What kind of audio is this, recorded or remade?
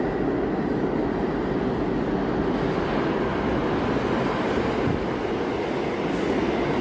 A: recorded